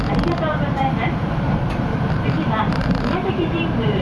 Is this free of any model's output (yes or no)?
no